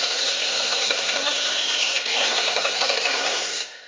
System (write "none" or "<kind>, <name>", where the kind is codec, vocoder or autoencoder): codec, SNAC